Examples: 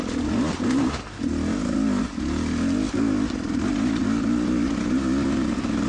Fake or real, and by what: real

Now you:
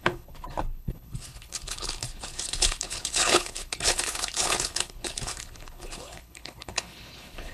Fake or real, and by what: fake, codec, HILCodec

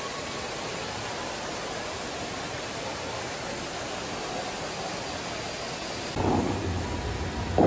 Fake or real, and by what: real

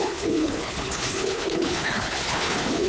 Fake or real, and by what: fake, codec, HILCodec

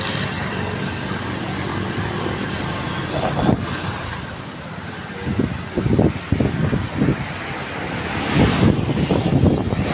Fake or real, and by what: real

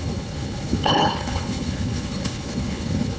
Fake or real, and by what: fake, codec, HILCodec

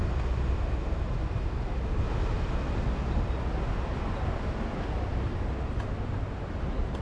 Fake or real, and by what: real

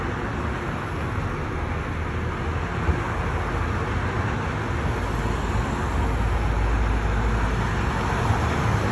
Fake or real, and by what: real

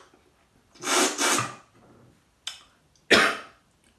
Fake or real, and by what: real